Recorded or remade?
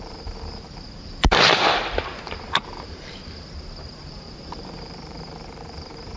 remade